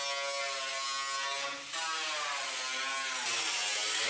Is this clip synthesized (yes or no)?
no